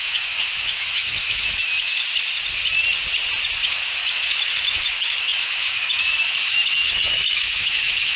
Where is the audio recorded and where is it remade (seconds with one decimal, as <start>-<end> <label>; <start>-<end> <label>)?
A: 0.0-1.9 remade; 1.9-3.7 recorded; 3.7-8.2 remade